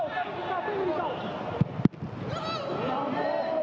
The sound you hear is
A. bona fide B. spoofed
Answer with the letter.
A